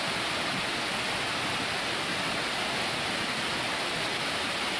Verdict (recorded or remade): recorded